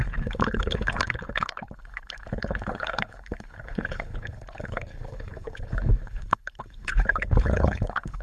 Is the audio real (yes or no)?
no